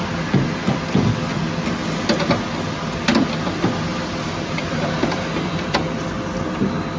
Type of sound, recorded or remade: recorded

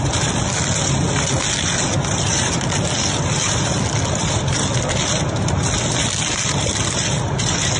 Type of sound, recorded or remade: recorded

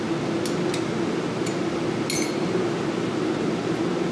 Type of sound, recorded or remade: recorded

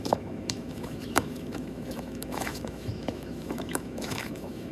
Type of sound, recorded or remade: remade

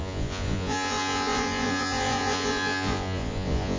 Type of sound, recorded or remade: remade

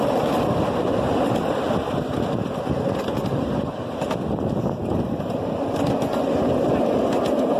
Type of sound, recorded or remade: recorded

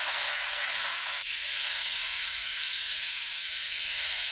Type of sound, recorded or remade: remade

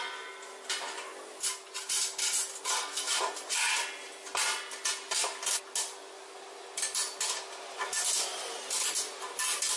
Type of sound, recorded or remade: recorded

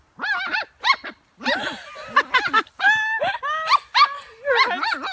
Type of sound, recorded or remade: recorded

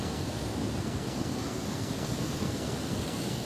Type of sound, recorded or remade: remade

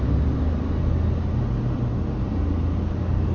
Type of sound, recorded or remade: recorded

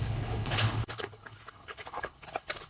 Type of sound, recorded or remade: remade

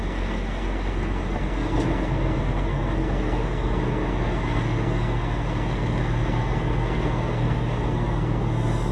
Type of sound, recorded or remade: remade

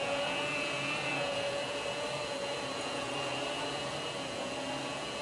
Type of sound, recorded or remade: remade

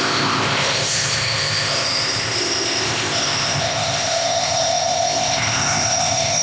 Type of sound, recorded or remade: remade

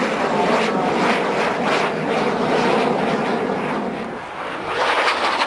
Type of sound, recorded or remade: recorded